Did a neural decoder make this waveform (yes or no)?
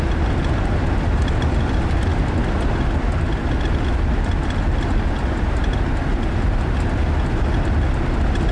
no